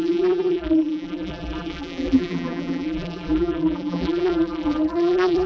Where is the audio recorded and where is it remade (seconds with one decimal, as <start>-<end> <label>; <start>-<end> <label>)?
0.0-5.5 remade